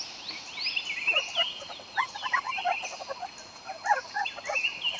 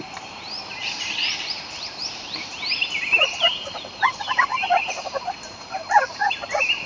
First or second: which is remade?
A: second